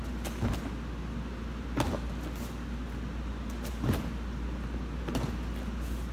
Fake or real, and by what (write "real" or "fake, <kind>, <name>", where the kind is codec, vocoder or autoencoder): real